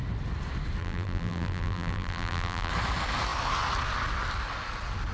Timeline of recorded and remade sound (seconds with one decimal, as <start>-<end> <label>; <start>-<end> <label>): 0.0-0.8 recorded; 0.8-2.7 remade; 2.7-5.1 recorded